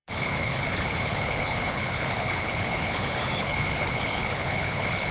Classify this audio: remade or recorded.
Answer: remade